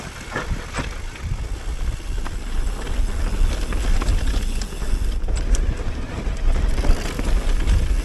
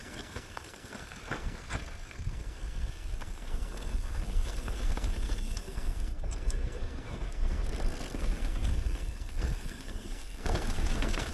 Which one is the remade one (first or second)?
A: second